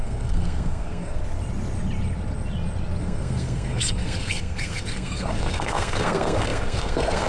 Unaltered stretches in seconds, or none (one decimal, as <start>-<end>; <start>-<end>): 1.2-3.0